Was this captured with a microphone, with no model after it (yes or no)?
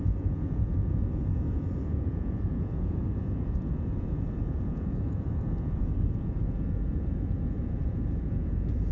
no